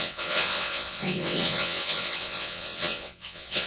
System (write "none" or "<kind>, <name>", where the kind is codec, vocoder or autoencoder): vocoder, WaveNeXt